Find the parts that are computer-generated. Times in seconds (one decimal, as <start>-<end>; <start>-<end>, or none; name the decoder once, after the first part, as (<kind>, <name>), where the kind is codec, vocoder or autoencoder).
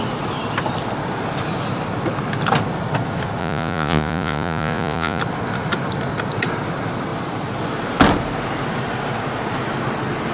3.4-5.2 (vocoder, Vocos)